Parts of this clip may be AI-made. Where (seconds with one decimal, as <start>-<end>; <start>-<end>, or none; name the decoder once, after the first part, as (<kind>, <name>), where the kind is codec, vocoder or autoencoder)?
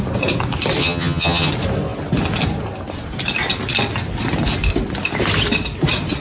0.8-1.5 (vocoder, HiFi-GAN)